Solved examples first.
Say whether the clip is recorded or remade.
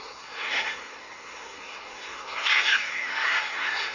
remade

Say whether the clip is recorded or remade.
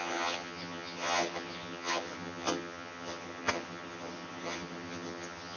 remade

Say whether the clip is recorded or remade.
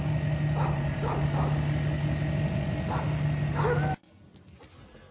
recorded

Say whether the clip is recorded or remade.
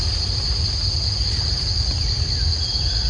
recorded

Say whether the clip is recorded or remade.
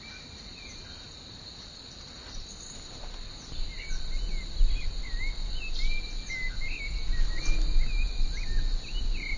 recorded